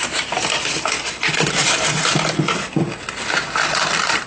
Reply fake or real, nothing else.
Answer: real